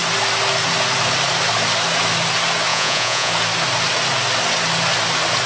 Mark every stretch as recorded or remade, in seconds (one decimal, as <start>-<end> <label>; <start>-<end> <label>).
0.0-2.7 recorded; 2.7-3.3 remade; 3.3-5.5 recorded